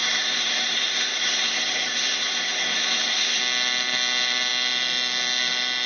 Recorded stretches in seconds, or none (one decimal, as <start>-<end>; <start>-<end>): 3.4-5.9